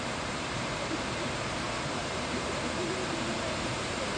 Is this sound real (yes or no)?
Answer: no